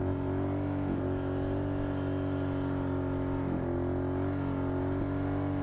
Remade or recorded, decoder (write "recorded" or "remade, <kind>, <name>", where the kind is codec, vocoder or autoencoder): recorded